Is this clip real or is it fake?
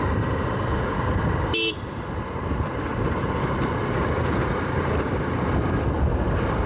real